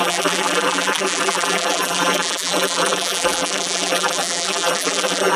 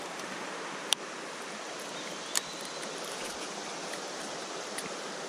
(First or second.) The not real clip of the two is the first